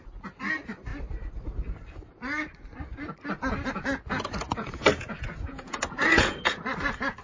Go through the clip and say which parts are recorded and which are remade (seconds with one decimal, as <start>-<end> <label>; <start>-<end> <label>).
0.0-4.5 recorded; 4.5-6.6 remade; 6.6-7.2 recorded